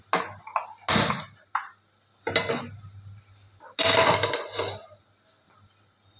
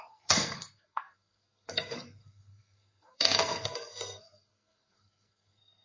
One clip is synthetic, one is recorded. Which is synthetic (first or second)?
second